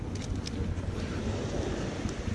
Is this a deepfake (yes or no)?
no